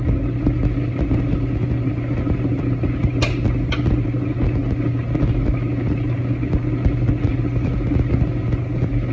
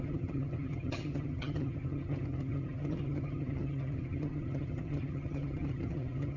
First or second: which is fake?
second